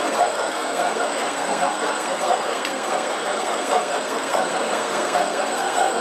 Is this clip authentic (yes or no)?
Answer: no